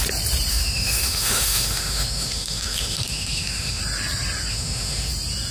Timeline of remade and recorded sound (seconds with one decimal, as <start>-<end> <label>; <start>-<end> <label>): 0.0-0.5 recorded; 0.5-3.8 remade; 3.8-4.5 recorded; 4.5-5.1 remade; 5.1-5.5 recorded